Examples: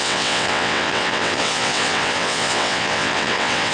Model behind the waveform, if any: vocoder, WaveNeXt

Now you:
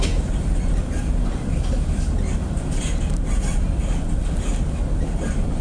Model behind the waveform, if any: none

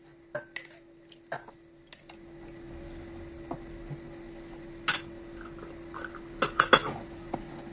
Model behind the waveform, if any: none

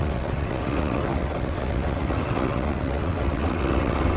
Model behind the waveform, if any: vocoder, WaveNeXt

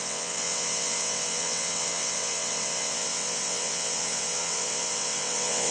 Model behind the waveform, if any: vocoder, WaveNeXt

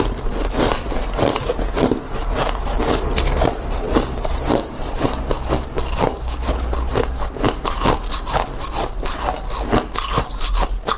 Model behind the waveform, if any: none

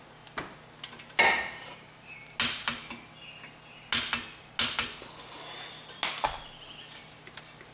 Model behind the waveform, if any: none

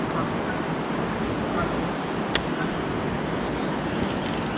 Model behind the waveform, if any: none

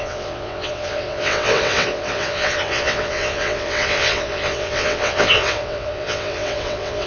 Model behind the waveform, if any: vocoder, WaveNeXt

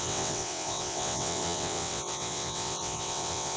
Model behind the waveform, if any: vocoder, WaveNeXt